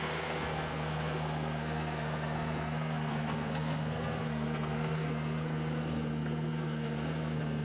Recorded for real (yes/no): no